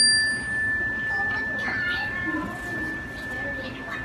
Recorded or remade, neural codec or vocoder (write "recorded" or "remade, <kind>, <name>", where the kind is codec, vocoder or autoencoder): recorded